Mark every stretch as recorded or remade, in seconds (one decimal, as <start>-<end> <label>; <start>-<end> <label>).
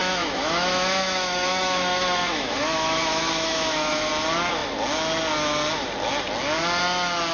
0.0-4.1 remade; 4.1-7.3 recorded